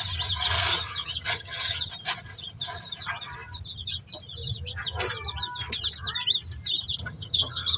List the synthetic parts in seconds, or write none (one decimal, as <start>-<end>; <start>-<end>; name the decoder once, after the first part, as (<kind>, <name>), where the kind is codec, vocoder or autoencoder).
0.7-1.9 (vocoder, HiFi-GAN); 7.0-7.8